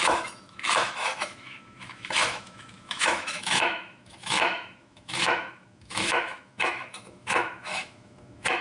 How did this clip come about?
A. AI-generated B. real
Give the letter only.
A